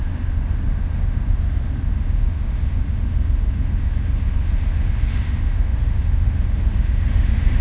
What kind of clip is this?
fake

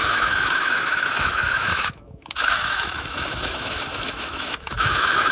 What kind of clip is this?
fake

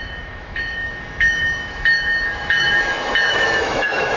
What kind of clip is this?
fake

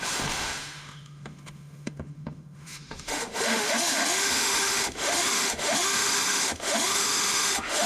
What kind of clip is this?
fake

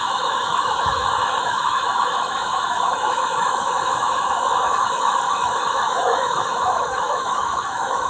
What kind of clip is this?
fake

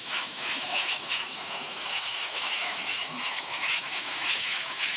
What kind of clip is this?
fake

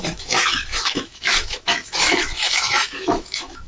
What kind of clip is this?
fake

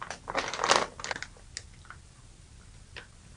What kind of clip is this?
real